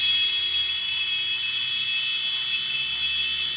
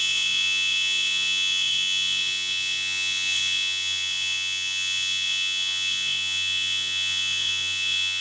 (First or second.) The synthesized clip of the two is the second